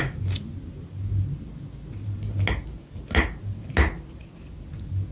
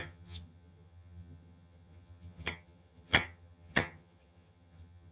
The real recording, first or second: first